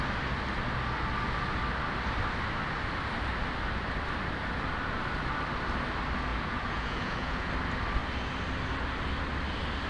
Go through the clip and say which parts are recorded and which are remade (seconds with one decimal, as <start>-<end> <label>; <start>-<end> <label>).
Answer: 0.0-6.3 recorded; 6.3-7.5 remade; 7.5-9.9 recorded